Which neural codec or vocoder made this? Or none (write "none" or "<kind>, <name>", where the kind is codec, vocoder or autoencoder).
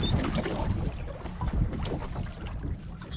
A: none